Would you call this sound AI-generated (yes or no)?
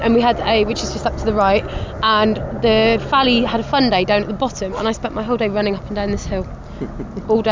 no